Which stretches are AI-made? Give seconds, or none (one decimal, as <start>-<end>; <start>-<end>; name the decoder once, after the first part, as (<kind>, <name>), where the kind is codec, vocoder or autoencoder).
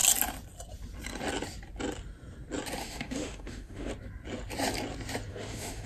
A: 2.8-3.9 (autoencoder, DAC-VAE); 5.3-5.9